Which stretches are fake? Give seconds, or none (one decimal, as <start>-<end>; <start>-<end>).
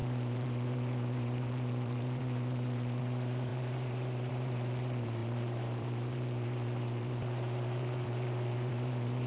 0.0-9.3